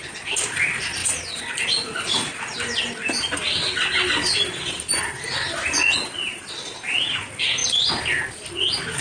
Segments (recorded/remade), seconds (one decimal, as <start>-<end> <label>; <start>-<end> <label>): 0.0-9.0 recorded